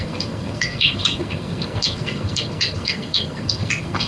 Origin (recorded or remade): remade